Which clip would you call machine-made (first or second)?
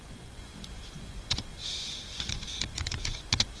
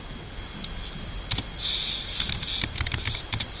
first